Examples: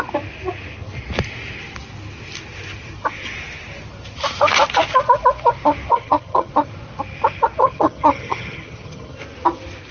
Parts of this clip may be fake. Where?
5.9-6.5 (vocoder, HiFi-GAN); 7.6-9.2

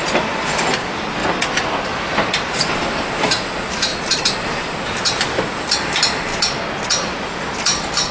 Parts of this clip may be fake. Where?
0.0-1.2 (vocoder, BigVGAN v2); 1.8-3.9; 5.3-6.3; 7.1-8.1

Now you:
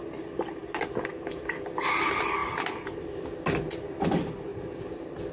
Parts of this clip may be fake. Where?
4.5-5.3 (vocoder, BigVGAN v2)

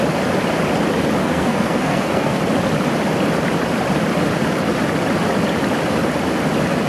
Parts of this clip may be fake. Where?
1.2-2.4 (codec, SNAC)

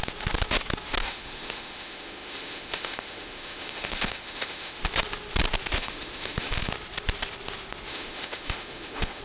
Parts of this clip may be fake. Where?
1.0-4.8 (autoencoder, DAC-VAE); 5.7-6.7; 7.9-9.2

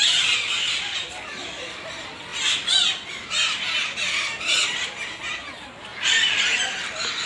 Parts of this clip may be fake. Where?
none